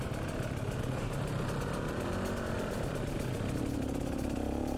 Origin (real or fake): real